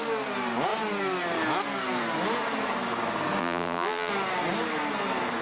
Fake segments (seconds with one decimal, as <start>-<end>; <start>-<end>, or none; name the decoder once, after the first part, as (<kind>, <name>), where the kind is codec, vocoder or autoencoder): 3.4-4.1 (vocoder, BigVGAN v2)